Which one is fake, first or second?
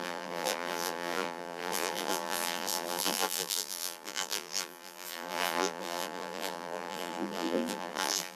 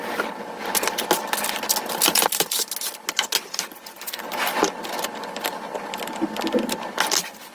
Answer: first